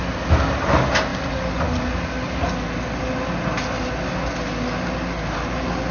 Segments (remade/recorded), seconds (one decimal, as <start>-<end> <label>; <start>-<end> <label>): 0.0-5.9 recorded